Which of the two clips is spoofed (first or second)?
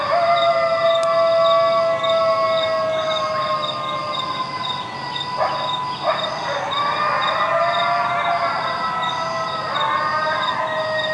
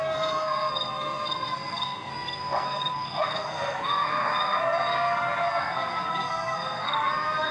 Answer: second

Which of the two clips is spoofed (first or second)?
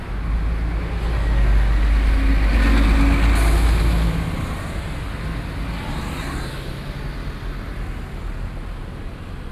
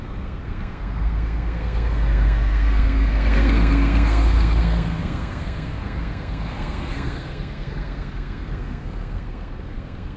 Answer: second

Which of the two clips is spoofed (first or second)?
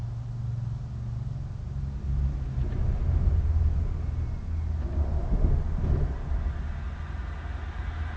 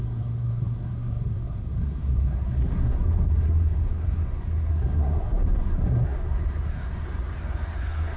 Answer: second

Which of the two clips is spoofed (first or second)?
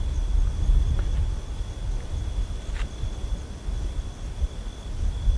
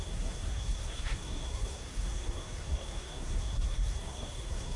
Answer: second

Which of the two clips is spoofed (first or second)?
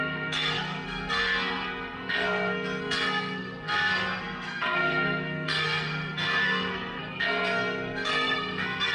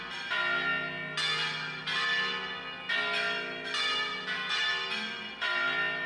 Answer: first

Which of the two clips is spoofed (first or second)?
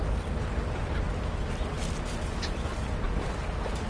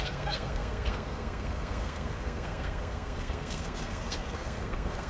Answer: second